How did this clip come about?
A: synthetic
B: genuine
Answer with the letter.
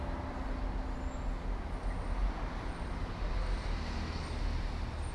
B